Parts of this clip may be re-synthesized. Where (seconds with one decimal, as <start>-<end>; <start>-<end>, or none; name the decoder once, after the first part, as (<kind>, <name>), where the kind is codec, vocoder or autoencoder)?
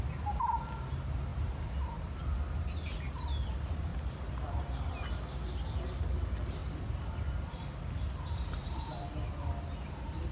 3.9-4.5 (vocoder, BigVGAN v2)